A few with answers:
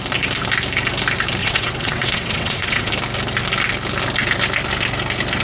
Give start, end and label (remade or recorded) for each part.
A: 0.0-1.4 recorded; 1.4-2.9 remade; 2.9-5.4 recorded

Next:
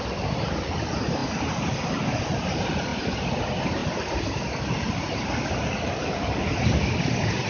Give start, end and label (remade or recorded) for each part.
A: 0.0-3.8 recorded; 3.8-6.5 remade; 6.5-7.5 recorded